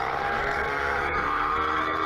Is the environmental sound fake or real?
fake